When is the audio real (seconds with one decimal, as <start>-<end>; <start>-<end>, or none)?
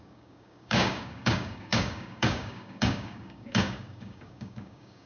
none